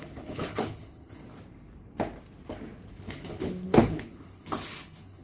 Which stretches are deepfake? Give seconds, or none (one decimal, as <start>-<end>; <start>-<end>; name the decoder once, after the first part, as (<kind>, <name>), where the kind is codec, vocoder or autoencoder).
0.0-1.2 (codec, HILCodec); 2.9-5.2